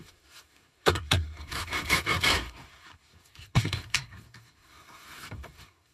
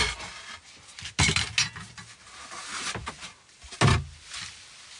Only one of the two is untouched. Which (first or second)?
second